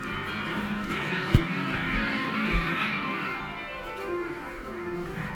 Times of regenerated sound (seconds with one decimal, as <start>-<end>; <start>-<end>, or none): 0.5-3.4; 4.0-5.3